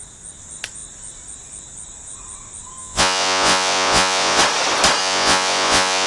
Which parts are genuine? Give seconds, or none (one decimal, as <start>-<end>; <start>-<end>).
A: 0.0-2.8; 4.4-5.0